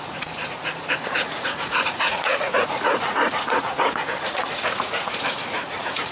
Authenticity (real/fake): fake